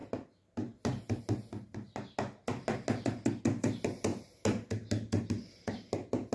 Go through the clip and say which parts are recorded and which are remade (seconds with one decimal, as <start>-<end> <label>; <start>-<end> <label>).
0.0-6.3 recorded